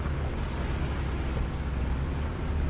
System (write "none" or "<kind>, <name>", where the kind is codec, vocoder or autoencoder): none